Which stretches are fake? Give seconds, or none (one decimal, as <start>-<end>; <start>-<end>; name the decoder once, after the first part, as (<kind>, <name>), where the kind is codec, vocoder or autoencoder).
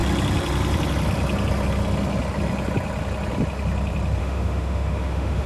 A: 4.2-5.5 (autoencoder, DAC-VAE)